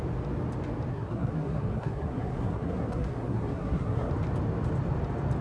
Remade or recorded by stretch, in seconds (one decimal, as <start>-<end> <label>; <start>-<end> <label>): 0.0-0.9 recorded; 0.9-4.1 remade; 4.1-5.4 recorded